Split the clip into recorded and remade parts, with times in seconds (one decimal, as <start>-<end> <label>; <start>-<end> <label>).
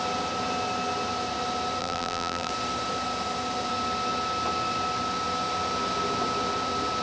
0.0-1.8 recorded; 1.8-2.5 remade; 2.5-7.0 recorded